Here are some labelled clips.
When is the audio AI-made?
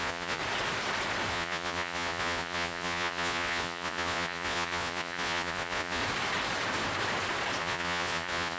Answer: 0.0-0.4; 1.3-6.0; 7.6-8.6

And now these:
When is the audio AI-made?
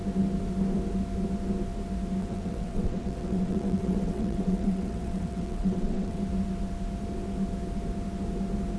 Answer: 2.2-6.2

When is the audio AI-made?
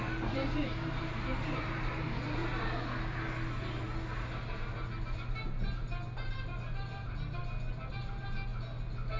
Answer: 0.0-2.4; 3.8-5.6; 6.3-7.4; 7.9-8.5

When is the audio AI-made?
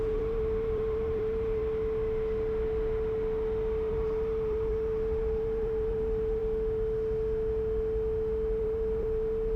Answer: 0.0-1.6; 3.9-6.4; 8.6-9.6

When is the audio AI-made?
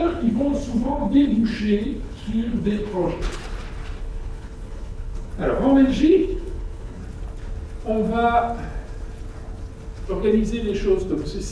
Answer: 0.0-3.4; 4.0-5.3; 5.9-7.0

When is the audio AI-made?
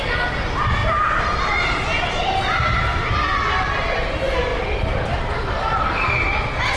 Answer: none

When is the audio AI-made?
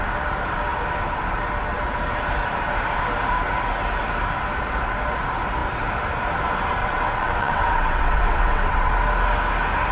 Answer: 6.8-8.9